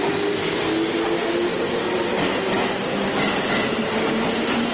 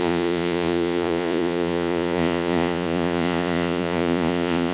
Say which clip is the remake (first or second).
second